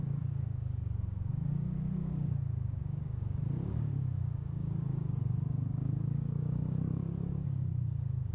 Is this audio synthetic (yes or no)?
yes